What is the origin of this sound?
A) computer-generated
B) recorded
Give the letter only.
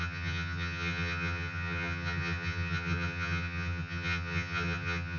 A